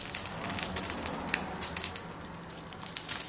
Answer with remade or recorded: recorded